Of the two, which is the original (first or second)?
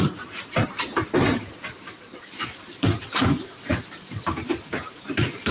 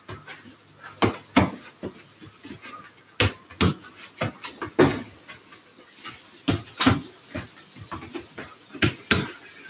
second